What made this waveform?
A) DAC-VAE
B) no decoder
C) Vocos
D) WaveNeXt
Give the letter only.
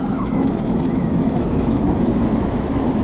A